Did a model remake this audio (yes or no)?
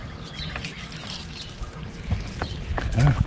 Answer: no